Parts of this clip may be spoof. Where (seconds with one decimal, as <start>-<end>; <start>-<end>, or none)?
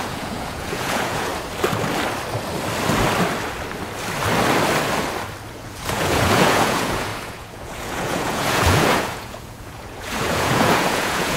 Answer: 0.0-1.3; 5.5-11.4